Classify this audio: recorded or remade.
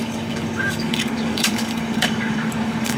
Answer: remade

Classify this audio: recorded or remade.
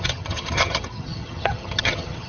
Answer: remade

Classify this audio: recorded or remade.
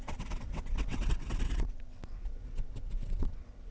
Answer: remade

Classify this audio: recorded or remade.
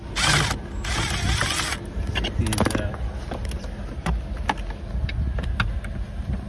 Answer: recorded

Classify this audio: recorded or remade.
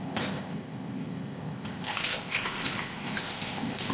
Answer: remade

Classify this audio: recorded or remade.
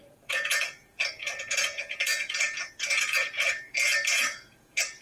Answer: remade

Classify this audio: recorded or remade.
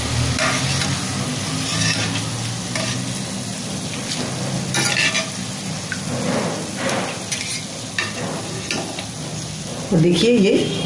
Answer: recorded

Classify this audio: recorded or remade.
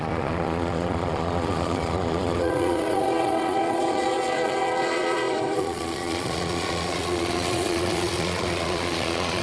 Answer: remade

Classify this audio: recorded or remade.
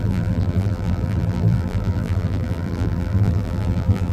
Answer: remade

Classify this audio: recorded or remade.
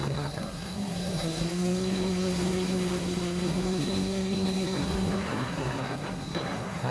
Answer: remade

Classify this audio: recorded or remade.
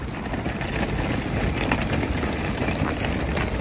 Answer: recorded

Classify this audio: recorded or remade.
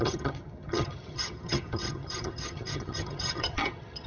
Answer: remade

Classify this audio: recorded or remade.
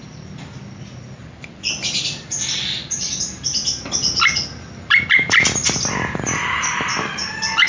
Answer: remade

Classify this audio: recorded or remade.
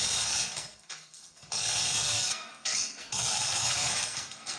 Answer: remade